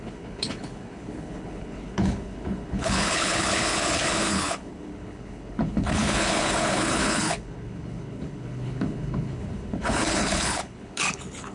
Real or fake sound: fake